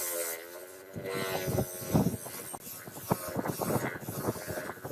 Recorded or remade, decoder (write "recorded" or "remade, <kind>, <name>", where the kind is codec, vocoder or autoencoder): recorded